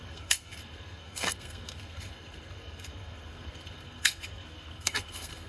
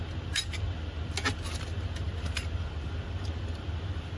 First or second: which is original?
second